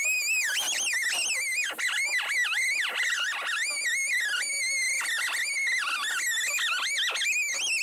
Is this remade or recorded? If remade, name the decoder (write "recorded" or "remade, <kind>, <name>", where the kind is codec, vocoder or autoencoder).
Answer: recorded